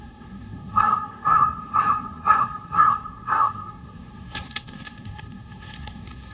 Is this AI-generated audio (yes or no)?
yes